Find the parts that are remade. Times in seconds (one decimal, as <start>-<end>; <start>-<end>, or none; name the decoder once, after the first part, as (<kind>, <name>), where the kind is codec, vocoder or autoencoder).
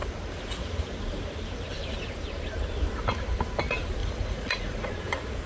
4.0-4.9 (vocoder, Vocos)